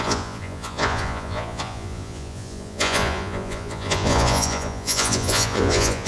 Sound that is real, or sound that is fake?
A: fake